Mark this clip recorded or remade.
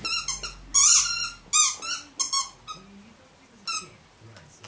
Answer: recorded